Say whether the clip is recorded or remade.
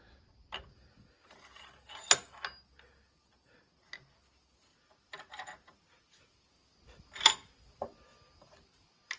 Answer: recorded